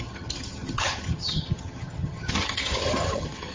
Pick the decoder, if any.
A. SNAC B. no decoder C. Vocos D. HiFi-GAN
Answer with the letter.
D